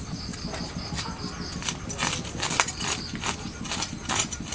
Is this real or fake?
real